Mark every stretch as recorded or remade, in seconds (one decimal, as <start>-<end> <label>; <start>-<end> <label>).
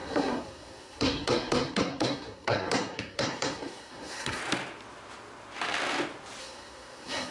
0.0-4.4 remade; 4.4-6.4 recorded; 6.4-7.3 remade